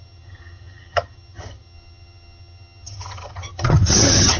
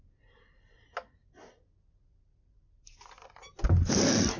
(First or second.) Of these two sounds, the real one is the second